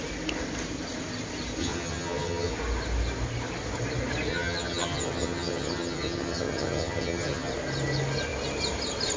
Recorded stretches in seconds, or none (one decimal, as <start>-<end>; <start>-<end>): 0.0-1.6; 2.5-4.3; 7.5-9.2